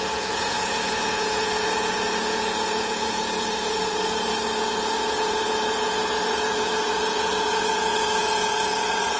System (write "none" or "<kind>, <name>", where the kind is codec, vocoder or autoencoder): vocoder, Vocos